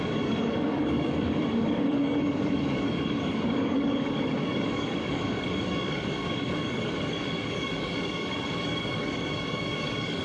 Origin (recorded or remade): remade